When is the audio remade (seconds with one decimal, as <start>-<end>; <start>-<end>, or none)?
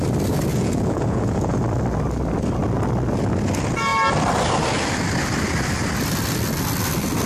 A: 0.5-1.6